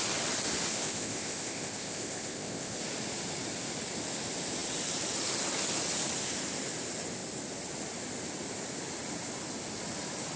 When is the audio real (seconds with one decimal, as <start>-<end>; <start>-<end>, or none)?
0.0-0.7; 2.8-10.4

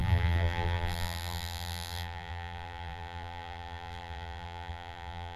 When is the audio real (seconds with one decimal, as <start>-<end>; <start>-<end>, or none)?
none